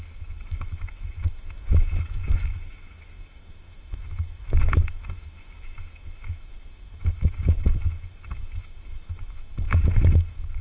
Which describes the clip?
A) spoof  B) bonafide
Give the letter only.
A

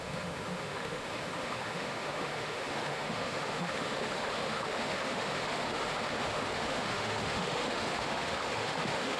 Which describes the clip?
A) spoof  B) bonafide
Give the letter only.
A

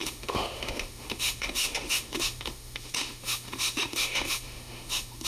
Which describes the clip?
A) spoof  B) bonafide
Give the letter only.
A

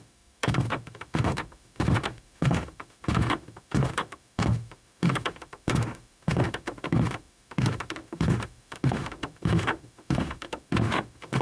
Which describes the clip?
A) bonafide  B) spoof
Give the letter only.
B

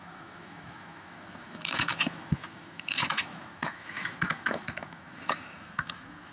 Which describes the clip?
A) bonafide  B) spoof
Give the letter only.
B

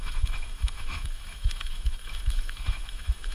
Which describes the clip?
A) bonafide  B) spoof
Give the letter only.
B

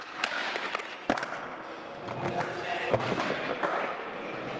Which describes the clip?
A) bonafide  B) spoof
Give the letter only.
A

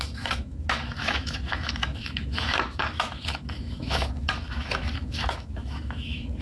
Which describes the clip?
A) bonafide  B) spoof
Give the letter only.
B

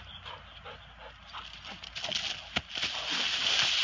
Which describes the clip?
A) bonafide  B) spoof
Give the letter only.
A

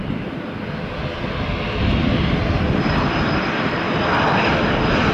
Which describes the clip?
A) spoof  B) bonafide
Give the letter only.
B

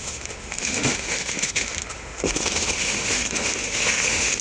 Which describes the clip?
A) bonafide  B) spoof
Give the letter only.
B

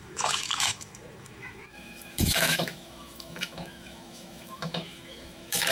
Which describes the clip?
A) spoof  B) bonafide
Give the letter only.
A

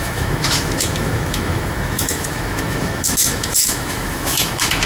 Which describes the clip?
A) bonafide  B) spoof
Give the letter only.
B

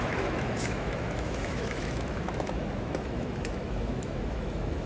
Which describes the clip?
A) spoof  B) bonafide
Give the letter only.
A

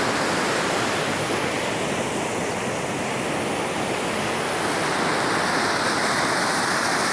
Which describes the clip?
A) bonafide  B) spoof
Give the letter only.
A